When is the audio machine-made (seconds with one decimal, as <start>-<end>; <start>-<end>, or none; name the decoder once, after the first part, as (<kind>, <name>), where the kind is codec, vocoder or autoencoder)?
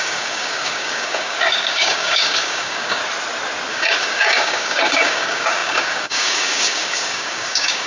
0.0-3.0 (codec, DAC); 3.7-7.9